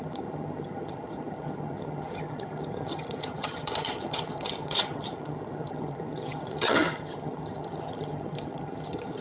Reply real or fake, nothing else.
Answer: fake